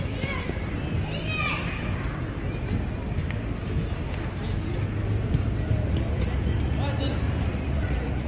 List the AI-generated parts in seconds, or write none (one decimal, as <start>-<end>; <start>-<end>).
7.5-8.3